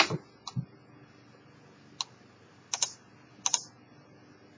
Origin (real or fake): real